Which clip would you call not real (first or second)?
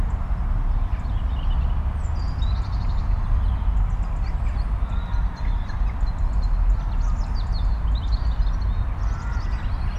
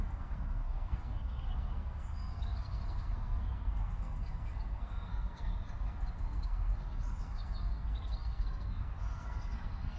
second